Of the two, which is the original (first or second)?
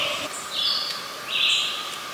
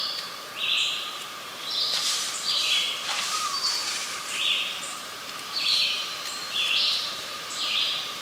first